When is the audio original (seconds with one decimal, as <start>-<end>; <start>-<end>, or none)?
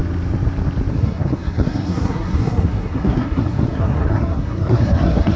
0.0-0.9